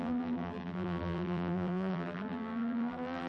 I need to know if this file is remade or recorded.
remade